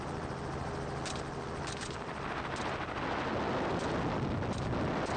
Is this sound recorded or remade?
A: recorded